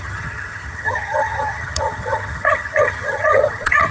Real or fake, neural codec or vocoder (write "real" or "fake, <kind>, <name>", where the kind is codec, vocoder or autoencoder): fake, vocoder, HiFi-GAN